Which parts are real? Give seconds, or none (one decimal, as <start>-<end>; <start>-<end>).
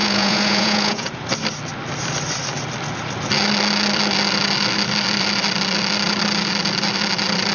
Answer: 1.1-7.5